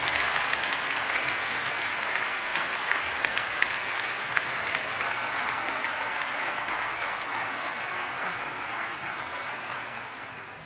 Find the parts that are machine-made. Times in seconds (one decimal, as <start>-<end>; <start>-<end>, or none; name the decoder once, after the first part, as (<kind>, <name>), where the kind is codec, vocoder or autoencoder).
0.0-10.7 (codec, SNAC)